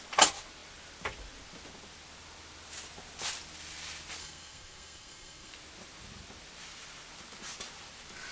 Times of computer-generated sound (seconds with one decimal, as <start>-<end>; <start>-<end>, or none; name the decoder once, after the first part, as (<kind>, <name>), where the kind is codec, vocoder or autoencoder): 4.2-5.5 (codec, SNAC)